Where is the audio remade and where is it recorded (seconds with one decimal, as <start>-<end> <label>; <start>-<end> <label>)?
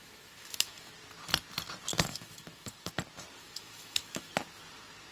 0.0-0.9 remade; 0.9-1.9 recorded; 1.9-2.9 remade; 2.9-3.4 recorded; 3.4-4.3 remade; 4.3-5.1 recorded